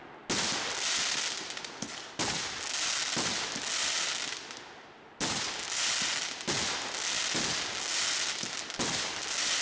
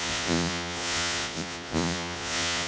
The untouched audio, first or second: first